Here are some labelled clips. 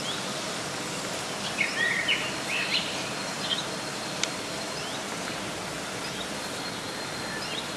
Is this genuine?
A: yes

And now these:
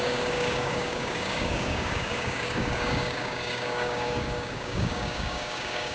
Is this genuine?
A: no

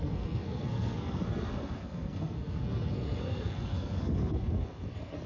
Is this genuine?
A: no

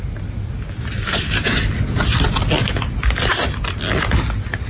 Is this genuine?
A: yes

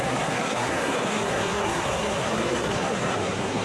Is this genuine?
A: no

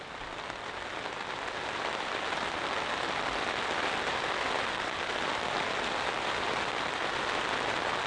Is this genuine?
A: yes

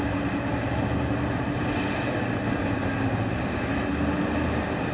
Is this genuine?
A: yes